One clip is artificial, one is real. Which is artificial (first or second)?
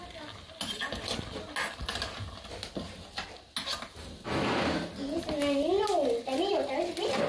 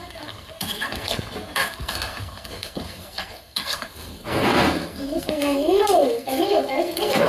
second